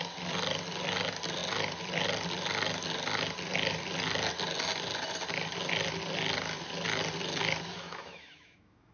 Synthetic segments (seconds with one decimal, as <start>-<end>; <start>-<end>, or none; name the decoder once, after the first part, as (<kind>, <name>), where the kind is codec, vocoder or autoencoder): 7.7-8.9 (autoencoder, DAC-VAE)